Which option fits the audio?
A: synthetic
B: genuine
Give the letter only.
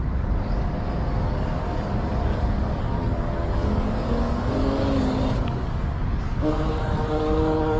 A